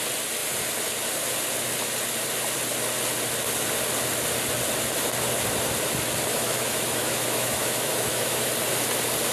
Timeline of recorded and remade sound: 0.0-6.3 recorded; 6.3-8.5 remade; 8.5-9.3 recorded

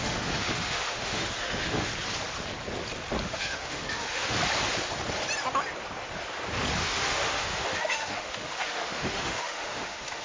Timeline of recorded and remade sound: 0.0-1.9 remade; 1.9-3.2 recorded; 3.2-4.4 remade; 4.4-6.8 recorded; 6.8-10.2 remade